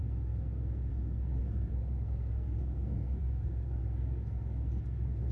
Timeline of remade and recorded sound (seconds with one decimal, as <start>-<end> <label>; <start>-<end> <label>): 0.0-5.3 remade